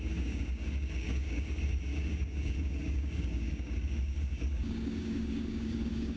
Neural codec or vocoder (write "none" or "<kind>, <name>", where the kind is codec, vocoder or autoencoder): codec, DAC